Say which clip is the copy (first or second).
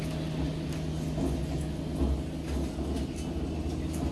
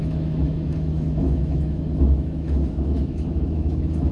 second